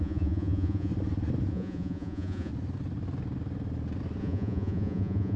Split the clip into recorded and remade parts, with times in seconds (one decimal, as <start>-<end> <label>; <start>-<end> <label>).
0.0-0.9 remade; 0.9-1.5 recorded; 1.5-2.5 remade; 2.5-4.2 recorded; 4.2-5.4 remade